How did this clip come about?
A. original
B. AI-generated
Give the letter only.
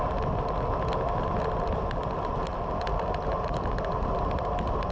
A